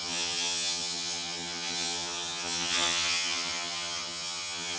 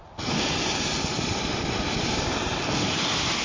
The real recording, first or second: second